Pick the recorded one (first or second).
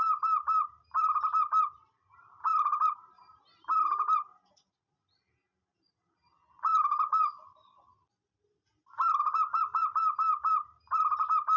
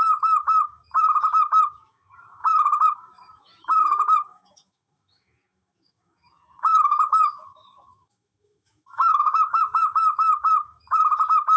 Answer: first